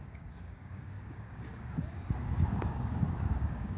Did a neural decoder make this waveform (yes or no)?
yes